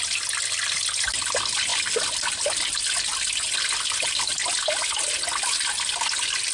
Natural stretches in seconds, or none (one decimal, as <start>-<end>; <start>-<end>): 0.0-6.5